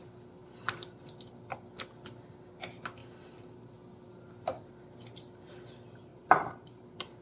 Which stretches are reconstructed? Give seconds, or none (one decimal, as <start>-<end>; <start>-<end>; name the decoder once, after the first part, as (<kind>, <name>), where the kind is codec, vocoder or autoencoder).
0.4-1.0 (vocoder, BigVGAN v2); 6.1-7.2